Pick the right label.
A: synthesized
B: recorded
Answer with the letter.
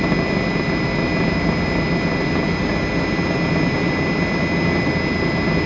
B